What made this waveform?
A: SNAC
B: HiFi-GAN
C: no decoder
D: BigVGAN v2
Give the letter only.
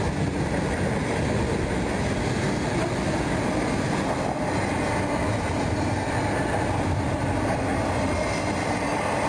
C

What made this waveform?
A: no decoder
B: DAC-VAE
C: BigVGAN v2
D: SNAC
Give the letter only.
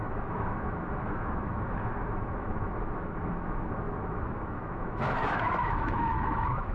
B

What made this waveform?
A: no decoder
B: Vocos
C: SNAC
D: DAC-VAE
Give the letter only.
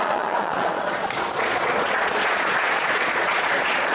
B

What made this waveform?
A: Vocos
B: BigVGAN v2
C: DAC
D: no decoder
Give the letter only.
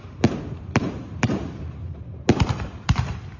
B